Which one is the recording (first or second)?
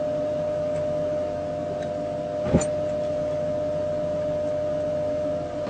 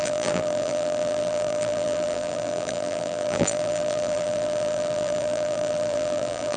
first